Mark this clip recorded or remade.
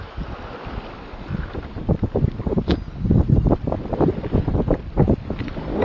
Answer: recorded